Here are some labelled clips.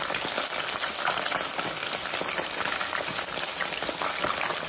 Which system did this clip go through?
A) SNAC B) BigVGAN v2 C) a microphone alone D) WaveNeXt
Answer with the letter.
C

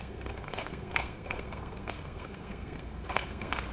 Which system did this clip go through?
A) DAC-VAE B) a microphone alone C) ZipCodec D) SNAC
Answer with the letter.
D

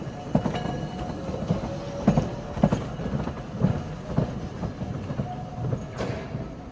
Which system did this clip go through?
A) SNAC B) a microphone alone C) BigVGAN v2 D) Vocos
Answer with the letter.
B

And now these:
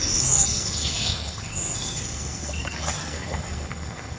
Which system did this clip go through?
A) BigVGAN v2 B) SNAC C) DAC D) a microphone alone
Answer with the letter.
B